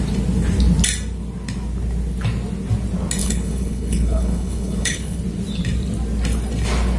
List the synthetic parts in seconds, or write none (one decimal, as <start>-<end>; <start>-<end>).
3.2-5.2